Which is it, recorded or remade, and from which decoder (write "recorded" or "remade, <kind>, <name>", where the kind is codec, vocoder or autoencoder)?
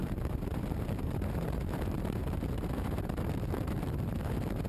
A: remade, vocoder, BigVGAN v2